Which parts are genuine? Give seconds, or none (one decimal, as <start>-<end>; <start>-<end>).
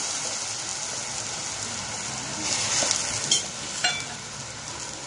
0.0-5.1